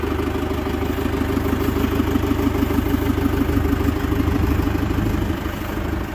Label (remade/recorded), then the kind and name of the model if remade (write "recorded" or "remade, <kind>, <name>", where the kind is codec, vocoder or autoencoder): recorded